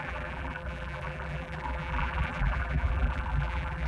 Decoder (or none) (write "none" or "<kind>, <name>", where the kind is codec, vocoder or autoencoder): vocoder, BigVGAN v2